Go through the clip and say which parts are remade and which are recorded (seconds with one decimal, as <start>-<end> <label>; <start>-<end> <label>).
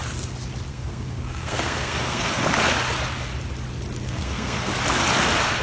0.0-0.7 recorded; 0.7-2.4 remade; 2.4-4.0 recorded; 4.0-4.7 remade; 4.7-5.6 recorded